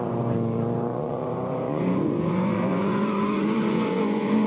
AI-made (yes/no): yes